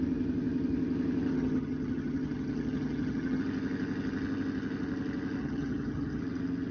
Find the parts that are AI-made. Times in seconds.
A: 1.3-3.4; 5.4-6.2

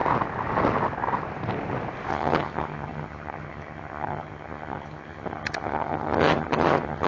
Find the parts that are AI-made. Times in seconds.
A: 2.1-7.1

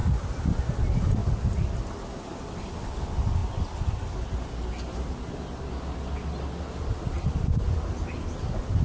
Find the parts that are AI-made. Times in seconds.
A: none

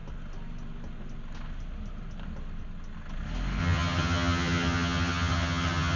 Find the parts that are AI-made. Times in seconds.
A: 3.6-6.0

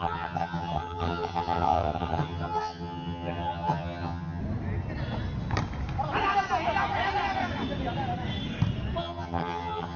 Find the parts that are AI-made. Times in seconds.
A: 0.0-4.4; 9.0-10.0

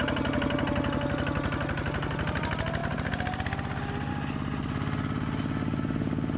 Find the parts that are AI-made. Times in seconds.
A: none

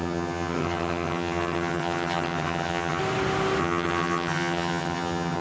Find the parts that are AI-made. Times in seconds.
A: 0.0-3.0; 3.6-5.4